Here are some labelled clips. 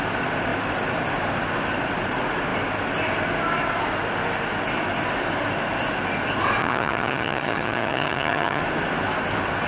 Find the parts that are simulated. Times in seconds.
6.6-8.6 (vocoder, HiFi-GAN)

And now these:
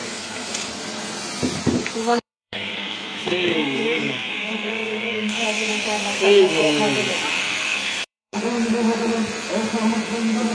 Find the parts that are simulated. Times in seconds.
0.0-0.7 (codec, SNAC); 2.0-6.8; 7.4-8.4

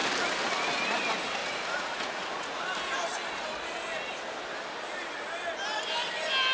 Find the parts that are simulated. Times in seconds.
1.4-2.6 (vocoder, Vocos)

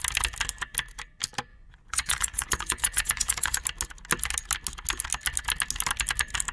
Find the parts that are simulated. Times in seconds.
1.5-3.6 (vocoder, Vocos)

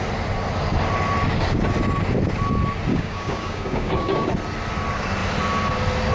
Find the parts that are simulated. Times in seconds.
2.9-4.3 (codec, DAC)

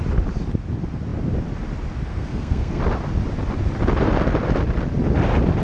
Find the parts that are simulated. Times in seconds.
2.1-2.8 (codec, SNAC)